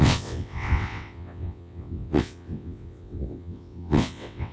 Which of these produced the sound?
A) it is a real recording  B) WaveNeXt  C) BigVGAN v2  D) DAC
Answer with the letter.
B